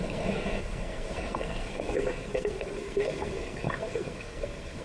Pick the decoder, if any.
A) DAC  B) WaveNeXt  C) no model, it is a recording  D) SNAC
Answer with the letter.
D